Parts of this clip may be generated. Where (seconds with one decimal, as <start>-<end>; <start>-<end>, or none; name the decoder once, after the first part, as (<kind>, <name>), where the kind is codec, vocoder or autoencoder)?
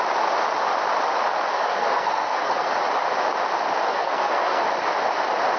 1.5-2.7 (codec, SNAC); 3.9-4.6